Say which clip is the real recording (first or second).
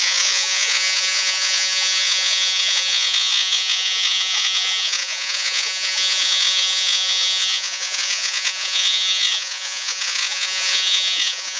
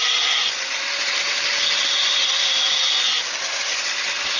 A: second